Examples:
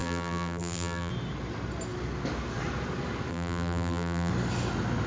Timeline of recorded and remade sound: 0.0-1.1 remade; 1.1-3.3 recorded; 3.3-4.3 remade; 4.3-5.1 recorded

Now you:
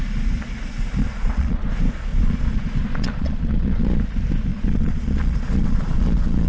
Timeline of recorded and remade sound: 0.0-1.0 recorded; 1.0-1.7 remade; 1.7-2.1 recorded; 2.1-4.0 remade; 4.0-4.5 recorded; 4.5-6.5 remade

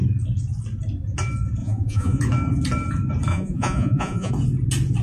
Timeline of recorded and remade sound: 0.0-1.6 recorded; 1.6-2.2 remade; 2.2-3.3 recorded; 3.3-4.3 remade; 4.3-5.0 recorded

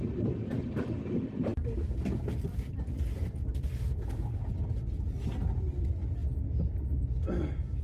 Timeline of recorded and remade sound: 0.0-7.8 recorded

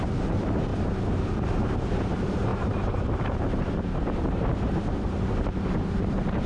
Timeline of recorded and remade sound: 0.0-0.7 remade; 0.7-1.9 recorded; 1.9-6.5 remade

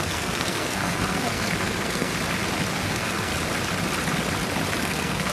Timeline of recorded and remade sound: 0.0-2.1 remade; 2.1-2.7 recorded; 2.7-3.3 remade; 3.3-4.8 recorded; 4.8-5.3 remade

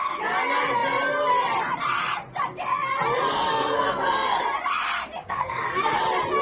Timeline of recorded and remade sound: 0.0-3.5 recorded; 3.5-4.4 remade; 4.4-5.2 recorded; 5.2-6.0 remade; 6.0-6.4 recorded